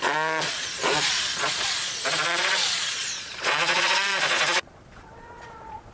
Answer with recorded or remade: remade